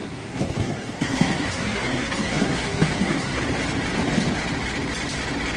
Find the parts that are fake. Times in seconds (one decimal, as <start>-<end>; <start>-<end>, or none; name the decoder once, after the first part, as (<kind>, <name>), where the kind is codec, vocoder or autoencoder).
0.0-3.4 (codec, SNAC)